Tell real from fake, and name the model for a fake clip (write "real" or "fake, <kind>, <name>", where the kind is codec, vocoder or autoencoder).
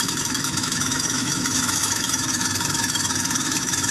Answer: fake, autoencoder, DAC-VAE